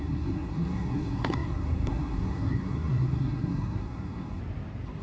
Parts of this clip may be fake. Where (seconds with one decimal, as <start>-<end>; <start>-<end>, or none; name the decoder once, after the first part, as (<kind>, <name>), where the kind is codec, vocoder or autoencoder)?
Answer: 0.0-4.4 (codec, SNAC)

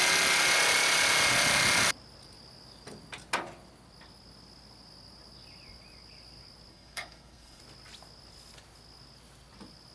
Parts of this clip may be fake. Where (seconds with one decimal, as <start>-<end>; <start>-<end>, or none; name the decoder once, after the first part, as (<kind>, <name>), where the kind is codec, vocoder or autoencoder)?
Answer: 6.7-7.6 (codec, SNAC)

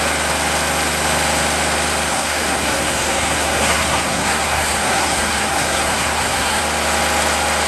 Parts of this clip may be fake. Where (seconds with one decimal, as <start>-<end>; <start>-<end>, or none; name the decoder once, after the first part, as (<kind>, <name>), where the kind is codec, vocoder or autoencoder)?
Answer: 2.1-6.6 (codec, SNAC)

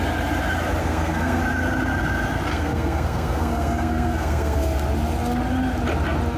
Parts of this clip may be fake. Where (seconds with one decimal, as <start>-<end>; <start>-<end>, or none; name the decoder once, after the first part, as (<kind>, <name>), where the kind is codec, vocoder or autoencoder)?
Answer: 0.8-1.4 (codec, SNAC); 2.5-4.6